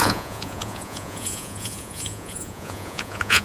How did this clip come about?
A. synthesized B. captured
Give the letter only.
A